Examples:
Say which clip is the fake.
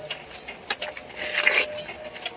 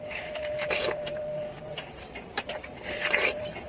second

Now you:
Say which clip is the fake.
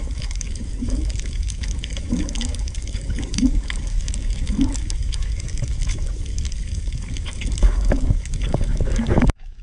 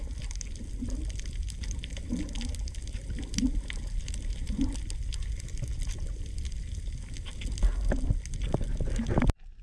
first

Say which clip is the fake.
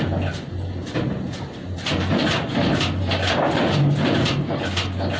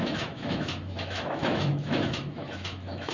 second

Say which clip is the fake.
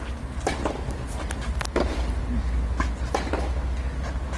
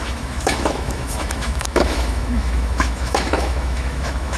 second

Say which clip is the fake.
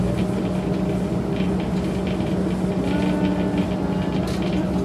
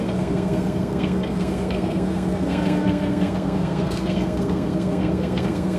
second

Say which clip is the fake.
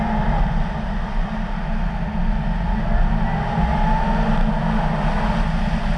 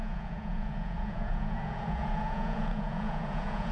second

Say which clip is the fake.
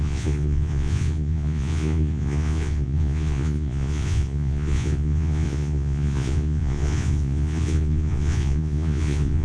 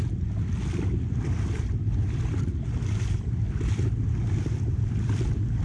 first